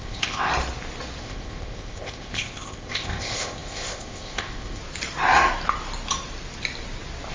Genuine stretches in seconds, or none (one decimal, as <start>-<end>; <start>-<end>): 0.5-1.2; 4.8-7.3